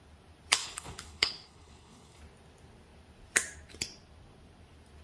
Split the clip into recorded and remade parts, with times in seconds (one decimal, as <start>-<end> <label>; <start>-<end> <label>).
0.0-0.6 recorded; 0.6-2.2 remade; 2.2-5.0 recorded